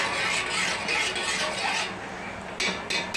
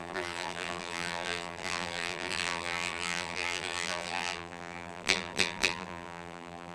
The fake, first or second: second